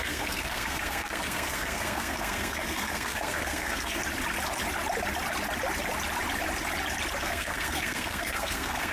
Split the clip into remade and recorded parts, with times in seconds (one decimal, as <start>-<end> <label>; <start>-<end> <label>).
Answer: 0.0-4.0 remade; 4.0-7.2 recorded; 7.2-8.9 remade